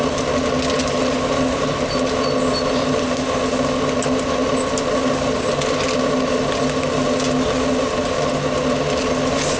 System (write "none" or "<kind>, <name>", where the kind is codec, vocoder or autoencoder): none